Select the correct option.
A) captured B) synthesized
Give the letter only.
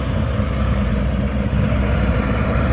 B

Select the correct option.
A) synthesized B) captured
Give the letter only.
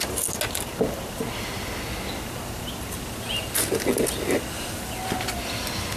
B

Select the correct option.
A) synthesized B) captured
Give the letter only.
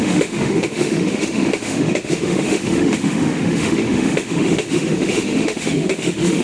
A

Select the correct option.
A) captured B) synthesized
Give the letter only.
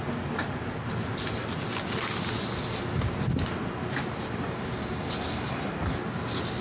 A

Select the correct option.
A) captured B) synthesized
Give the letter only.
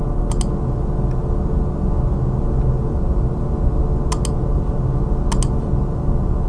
A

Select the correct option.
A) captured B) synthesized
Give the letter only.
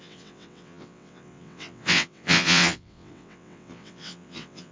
B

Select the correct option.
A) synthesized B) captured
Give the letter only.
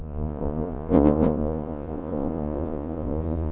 A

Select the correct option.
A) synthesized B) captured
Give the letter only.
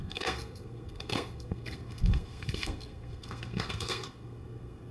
A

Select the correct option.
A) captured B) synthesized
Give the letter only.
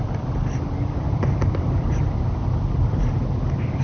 B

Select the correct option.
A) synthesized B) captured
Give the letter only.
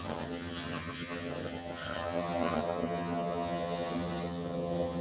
A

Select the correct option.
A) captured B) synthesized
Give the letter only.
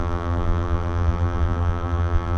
B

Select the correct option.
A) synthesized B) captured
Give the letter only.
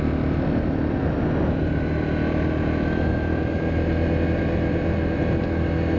B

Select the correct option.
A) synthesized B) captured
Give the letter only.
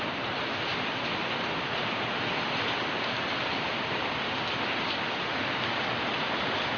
B